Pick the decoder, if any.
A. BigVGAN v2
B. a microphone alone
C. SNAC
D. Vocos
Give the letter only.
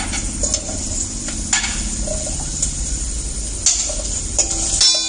B